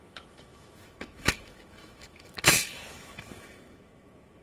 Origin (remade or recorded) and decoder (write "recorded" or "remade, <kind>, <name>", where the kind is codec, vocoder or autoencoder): remade, autoencoder, DAC-VAE